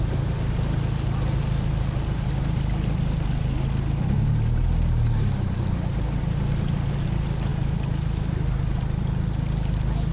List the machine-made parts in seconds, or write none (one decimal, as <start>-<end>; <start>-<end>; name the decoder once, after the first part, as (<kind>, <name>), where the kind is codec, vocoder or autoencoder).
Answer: none